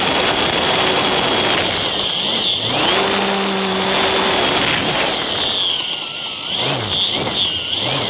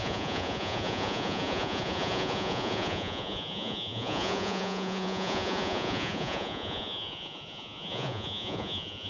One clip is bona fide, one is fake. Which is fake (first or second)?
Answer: second